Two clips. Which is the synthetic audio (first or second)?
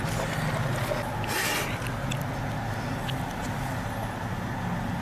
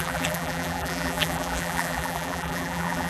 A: second